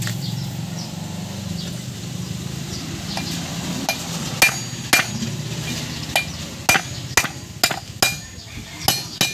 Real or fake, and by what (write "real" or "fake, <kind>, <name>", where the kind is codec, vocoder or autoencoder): real